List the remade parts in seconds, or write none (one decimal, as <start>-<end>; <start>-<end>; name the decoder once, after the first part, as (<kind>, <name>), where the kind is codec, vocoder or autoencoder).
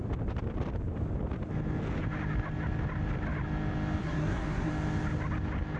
4.0-4.7 (codec, SNAC)